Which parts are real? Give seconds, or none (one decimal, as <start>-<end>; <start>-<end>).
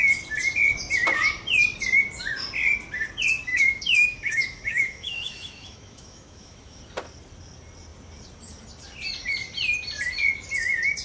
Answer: 0.0-3.5; 6.8-11.0